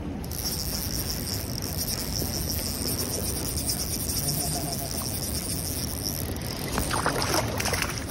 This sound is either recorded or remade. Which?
recorded